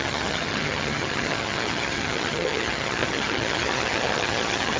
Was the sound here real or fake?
fake